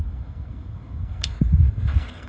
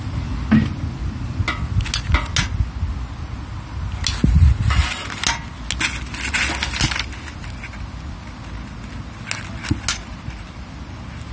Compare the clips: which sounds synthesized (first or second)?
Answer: first